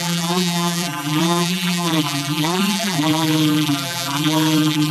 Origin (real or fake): fake